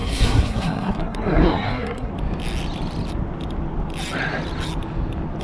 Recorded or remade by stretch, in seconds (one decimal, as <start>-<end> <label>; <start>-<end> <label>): 0.0-2.1 remade; 2.1-5.4 recorded